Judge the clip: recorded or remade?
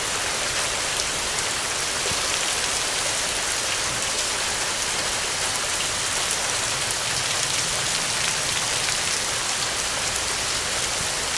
recorded